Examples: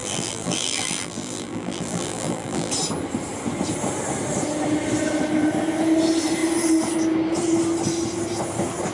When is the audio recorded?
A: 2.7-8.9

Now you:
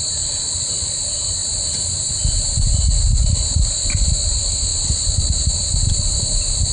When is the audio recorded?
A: 0.0-6.7

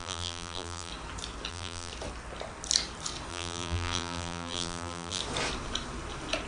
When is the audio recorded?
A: 0.9-1.5; 1.9-3.3; 5.2-6.5

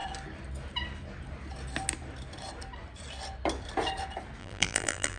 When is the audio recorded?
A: 0.0-4.4

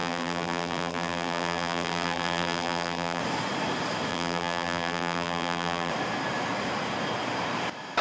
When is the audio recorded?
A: 3.2-4.1; 5.9-8.0

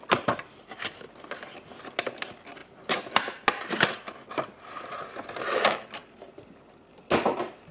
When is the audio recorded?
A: 0.0-7.7